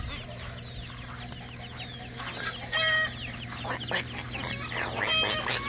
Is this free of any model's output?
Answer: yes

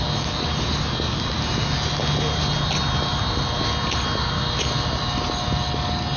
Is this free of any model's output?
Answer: yes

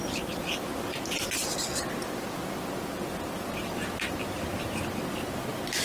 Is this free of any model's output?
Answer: yes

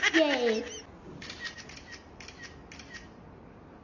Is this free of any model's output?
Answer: yes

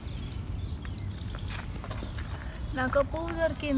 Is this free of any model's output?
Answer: yes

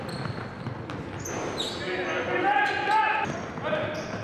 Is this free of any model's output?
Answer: yes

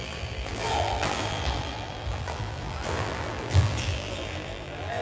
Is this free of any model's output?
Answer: no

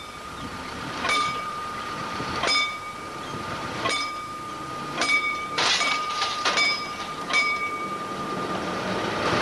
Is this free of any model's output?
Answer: no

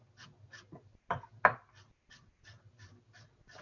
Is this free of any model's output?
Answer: yes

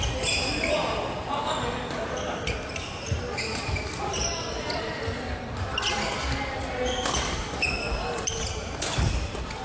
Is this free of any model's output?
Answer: yes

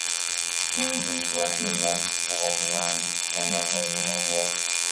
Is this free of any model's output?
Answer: no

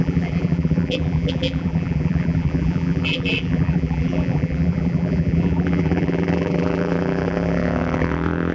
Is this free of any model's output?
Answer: no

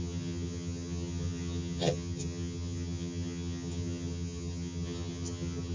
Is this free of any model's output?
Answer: no